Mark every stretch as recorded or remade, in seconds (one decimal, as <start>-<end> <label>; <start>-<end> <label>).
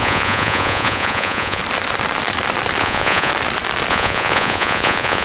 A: 0.0-1.6 remade; 1.6-2.8 recorded; 2.8-3.3 remade; 3.3-3.9 recorded; 3.9-5.2 remade